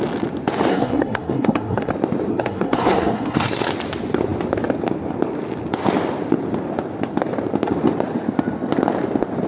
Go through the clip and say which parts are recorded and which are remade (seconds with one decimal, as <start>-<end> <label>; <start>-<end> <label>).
0.0-0.7 recorded; 0.7-1.9 remade; 1.9-2.3 recorded; 2.3-3.7 remade; 3.7-9.5 recorded